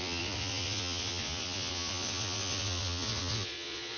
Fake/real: fake